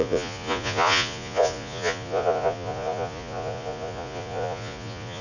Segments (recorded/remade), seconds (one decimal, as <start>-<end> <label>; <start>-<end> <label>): 0.0-5.2 remade